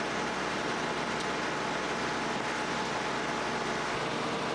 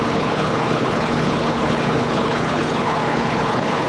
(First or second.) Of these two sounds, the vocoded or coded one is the second